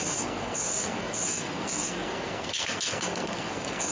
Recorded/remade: remade